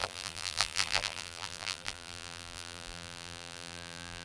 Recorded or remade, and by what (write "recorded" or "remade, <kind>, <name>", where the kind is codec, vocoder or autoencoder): remade, vocoder, BigVGAN v2